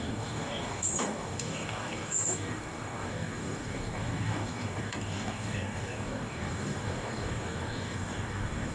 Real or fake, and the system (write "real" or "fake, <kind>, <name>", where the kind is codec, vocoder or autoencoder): fake, codec, DAC